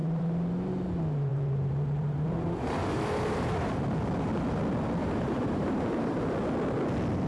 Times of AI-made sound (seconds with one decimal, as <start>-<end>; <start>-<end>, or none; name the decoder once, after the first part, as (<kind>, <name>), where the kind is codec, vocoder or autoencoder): 0.0-0.7 (vocoder, BigVGAN v2); 1.3-3.7; 5.0-6.1